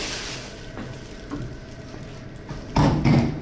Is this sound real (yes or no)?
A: yes